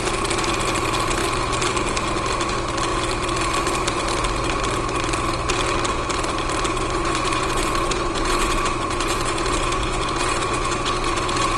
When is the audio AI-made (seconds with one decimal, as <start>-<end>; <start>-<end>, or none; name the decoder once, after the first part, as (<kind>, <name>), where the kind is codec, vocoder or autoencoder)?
6.7-11.6 (vocoder, Vocos)